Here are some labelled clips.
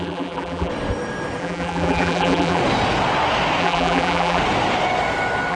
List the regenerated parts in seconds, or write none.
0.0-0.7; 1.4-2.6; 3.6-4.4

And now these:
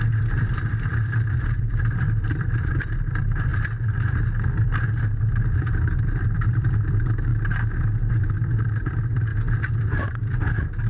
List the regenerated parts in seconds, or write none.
0.0-7.3; 8.1-9.3; 10.1-10.9

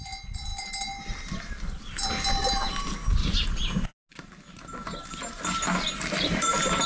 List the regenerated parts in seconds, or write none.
none